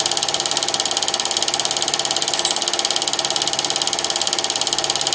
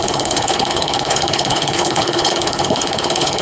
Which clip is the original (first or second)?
first